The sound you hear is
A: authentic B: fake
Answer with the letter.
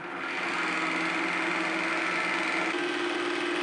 A